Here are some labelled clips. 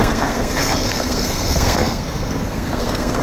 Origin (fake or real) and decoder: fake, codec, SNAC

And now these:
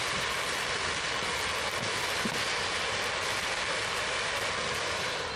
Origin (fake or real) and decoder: real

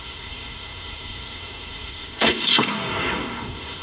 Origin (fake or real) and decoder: fake, codec, SNAC